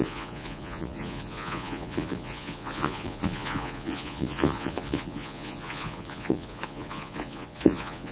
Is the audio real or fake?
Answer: fake